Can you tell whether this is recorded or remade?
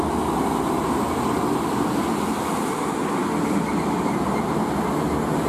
recorded